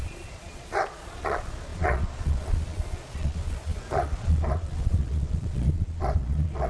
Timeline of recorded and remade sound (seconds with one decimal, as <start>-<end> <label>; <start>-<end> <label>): 0.0-6.7 remade